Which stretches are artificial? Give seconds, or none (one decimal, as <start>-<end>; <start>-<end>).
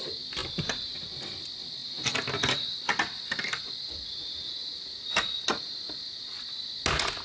none